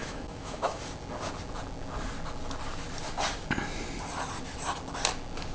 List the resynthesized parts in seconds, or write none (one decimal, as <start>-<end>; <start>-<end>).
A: 0.0-0.8

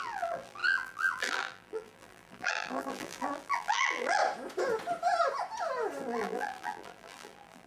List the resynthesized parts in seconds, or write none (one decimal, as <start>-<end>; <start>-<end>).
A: 0.0-4.2; 6.0-7.7

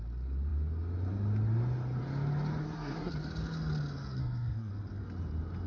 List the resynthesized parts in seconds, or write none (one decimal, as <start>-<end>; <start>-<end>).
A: 2.6-3.1; 4.2-4.7